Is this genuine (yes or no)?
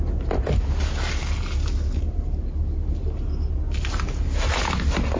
yes